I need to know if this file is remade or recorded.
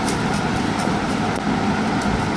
recorded